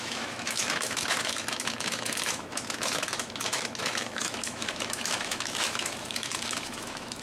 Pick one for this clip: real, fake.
fake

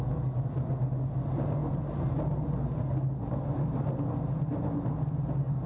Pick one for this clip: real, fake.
real